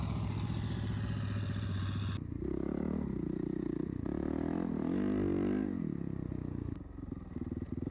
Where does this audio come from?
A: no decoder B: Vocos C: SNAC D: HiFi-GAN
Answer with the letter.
A